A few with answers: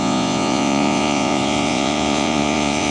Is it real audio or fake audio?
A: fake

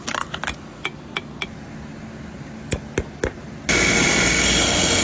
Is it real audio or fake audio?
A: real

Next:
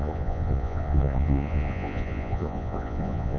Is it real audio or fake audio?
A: fake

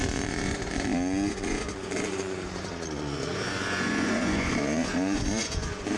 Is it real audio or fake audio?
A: fake